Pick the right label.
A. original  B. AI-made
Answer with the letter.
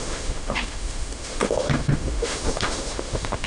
B